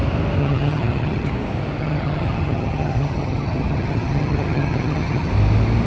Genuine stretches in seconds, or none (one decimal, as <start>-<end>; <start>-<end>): 0.0-0.4; 1.3-1.8; 5.3-5.9